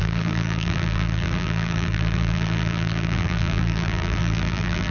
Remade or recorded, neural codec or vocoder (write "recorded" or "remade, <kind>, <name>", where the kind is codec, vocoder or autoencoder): remade, vocoder, BigVGAN v2